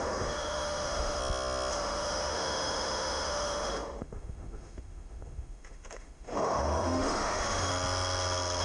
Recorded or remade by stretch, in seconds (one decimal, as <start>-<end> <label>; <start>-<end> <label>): 0.0-1.2 remade; 1.2-1.7 recorded; 1.7-7.7 remade; 7.7-8.6 recorded